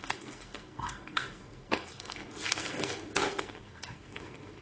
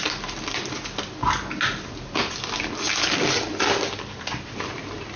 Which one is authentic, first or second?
second